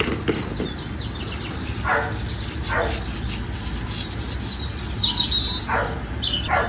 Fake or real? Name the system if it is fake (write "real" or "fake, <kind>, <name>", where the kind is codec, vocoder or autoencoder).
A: real